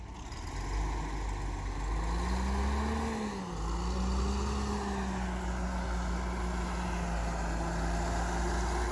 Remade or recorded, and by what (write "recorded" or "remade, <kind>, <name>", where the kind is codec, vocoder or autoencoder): recorded